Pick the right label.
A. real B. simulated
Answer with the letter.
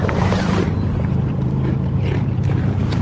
B